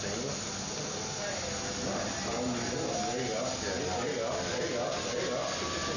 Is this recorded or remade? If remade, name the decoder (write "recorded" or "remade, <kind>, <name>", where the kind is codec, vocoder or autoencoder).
recorded